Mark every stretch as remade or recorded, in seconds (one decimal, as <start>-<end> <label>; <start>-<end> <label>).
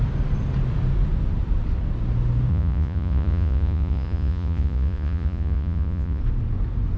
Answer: 0.0-2.5 recorded; 2.5-6.2 remade; 6.2-7.0 recorded